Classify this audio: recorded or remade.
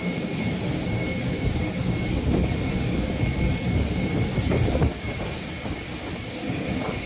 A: remade